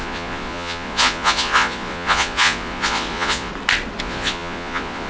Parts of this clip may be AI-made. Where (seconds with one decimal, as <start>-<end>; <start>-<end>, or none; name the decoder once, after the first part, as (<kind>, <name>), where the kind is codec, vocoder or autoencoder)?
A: 0.0-3.5 (vocoder, Vocos); 4.0-5.1